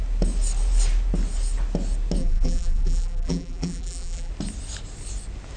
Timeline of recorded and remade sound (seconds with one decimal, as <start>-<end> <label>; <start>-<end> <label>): 0.0-2.2 recorded; 2.2-4.3 remade; 4.3-5.6 recorded